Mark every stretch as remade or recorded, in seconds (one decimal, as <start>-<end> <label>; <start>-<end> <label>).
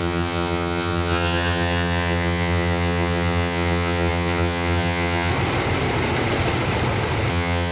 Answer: 0.0-5.3 remade; 5.3-7.3 recorded; 7.3-7.7 remade